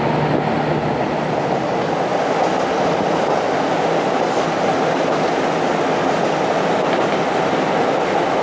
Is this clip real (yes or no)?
yes